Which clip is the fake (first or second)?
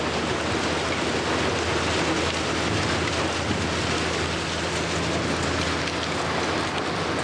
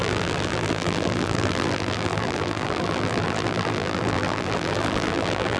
second